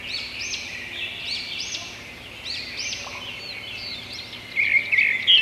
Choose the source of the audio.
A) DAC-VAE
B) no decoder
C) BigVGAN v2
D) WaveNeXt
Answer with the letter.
B